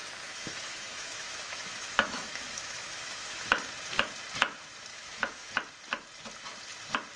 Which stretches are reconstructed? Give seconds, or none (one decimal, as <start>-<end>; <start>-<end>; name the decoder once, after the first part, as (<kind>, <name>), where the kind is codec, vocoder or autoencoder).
0.0-3.5 (autoencoder, DAC-VAE); 4.9-5.5